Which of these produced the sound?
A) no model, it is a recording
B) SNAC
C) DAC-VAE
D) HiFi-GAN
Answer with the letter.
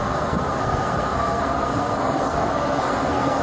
B